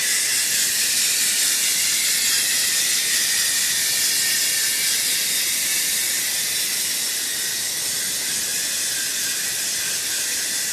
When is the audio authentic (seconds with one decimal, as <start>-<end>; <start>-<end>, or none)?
0.0-10.7